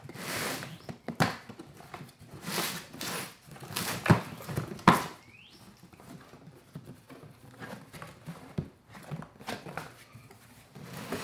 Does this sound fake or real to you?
fake